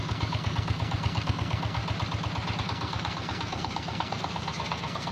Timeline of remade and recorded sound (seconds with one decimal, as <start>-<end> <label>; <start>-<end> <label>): 0.0-1.8 remade; 1.8-2.6 recorded; 2.6-5.1 remade